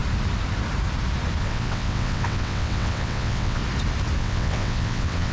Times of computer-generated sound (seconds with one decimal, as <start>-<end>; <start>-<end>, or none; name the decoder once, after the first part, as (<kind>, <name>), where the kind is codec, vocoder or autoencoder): 1.4-3.6 (vocoder, WaveNeXt); 4.2-5.3